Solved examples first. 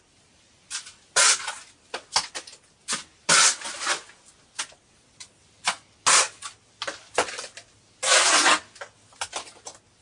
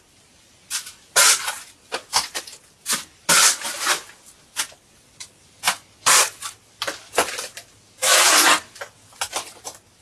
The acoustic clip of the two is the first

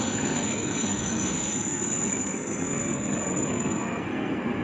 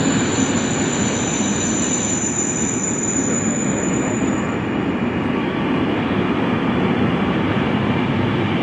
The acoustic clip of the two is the second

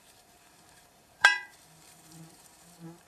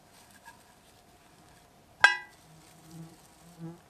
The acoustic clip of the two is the second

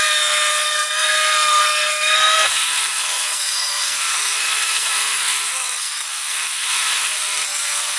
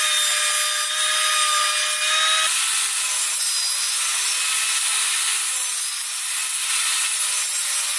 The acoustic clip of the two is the second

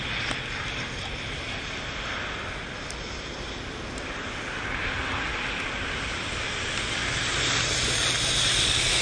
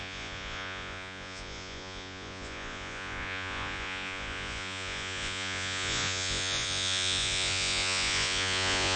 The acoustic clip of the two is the first